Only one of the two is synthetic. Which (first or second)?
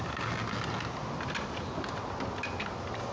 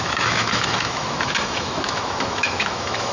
second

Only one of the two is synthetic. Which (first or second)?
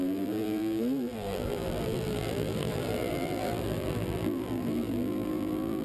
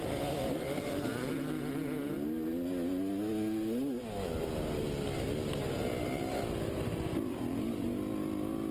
first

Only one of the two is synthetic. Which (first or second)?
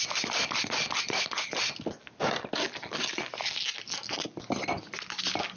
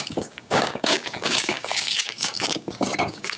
second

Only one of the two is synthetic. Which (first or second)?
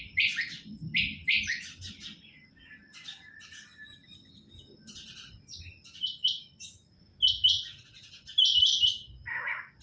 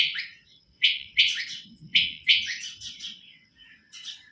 second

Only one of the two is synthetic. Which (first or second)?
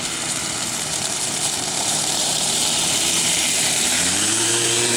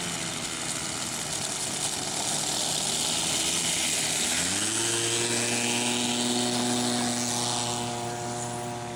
first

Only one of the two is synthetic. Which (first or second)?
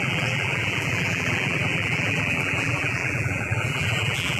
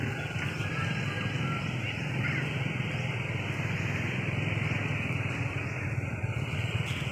first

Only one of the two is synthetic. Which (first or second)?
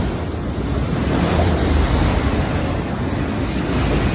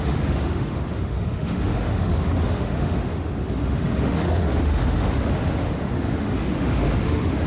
second